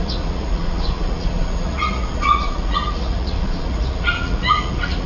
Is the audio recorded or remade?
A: remade